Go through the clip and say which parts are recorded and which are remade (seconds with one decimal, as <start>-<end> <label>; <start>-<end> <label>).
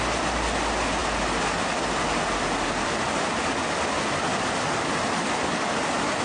0.0-6.2 recorded